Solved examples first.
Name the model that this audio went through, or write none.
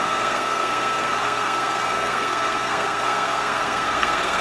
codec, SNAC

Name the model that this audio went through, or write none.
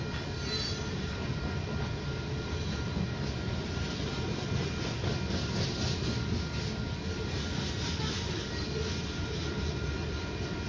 none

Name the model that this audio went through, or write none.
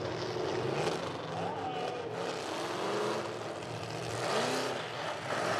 none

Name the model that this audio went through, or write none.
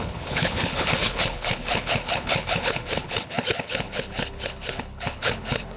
codec, HILCodec